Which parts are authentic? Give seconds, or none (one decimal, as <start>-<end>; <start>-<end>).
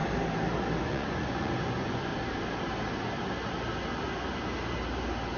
0.0-0.8; 2.1-5.4